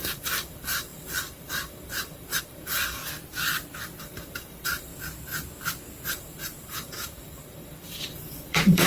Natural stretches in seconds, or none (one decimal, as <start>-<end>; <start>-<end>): 3.0-4.0; 4.9-6.1